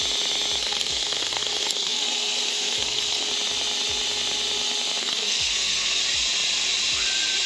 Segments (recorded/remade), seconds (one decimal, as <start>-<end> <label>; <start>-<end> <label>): 0.0-0.6 recorded; 0.6-3.3 remade; 3.3-5.0 recorded; 5.0-6.0 remade; 6.0-7.5 recorded

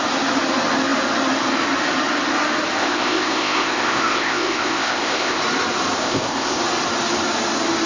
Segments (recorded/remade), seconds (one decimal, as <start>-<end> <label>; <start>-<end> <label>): 0.0-2.8 recorded; 2.8-5.4 remade; 5.4-6.0 recorded; 6.0-6.6 remade; 6.6-7.9 recorded